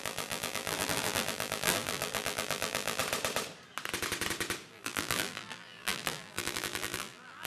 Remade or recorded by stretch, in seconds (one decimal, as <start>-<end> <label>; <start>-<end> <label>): 0.0-3.0 remade; 3.0-4.7 recorded; 4.7-7.5 remade